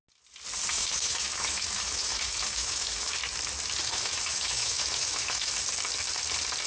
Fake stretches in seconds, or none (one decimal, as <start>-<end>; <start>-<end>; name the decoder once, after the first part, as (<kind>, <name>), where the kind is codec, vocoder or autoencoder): 0.7-3.2 (autoencoder, DAC-VAE); 3.8-5.5